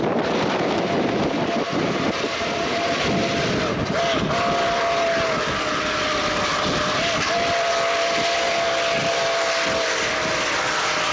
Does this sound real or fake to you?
real